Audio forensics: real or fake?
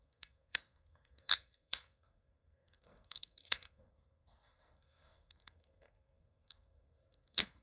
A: fake